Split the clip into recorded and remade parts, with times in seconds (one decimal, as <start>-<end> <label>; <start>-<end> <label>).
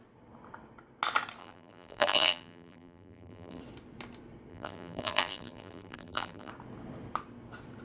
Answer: 0.0-1.4 recorded; 1.4-3.6 remade; 3.6-4.5 recorded; 4.5-6.5 remade; 6.5-7.8 recorded